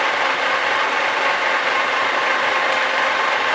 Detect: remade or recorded recorded